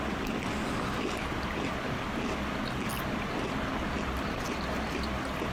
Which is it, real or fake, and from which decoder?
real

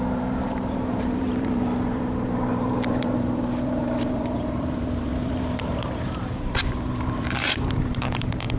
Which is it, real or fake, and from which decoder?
fake, vocoder, BigVGAN v2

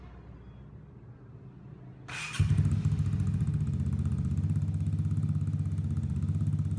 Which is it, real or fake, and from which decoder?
real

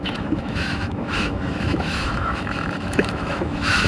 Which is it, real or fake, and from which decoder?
fake, autoencoder, DAC-VAE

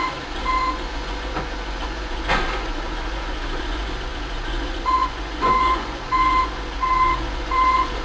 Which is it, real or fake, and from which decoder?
fake, vocoder, Vocos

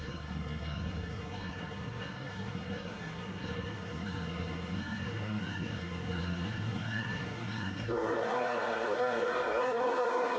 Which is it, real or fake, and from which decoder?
fake, codec, SNAC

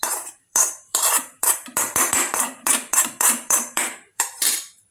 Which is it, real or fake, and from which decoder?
fake, vocoder, BigVGAN v2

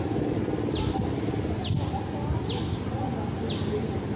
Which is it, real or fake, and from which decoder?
real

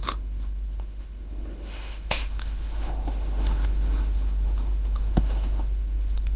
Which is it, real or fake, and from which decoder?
fake, autoencoder, DAC-VAE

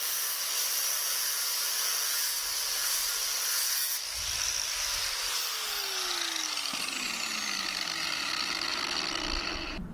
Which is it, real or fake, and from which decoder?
real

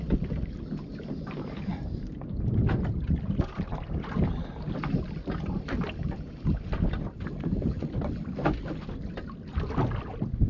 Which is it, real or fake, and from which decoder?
real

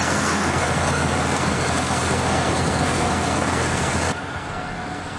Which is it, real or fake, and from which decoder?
fake, codec, SNAC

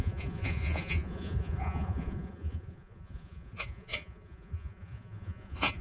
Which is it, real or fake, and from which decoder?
fake, vocoder, Vocos